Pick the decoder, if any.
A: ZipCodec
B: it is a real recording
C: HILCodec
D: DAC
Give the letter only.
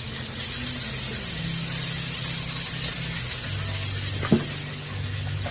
B